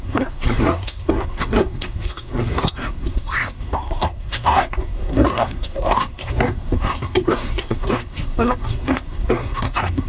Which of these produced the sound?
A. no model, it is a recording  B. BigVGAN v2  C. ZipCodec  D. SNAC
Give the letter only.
D